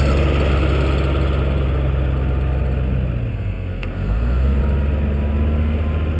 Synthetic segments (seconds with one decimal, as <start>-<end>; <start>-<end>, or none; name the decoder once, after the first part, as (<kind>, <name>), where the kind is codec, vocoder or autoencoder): 3.3-4.6 (codec, SNAC)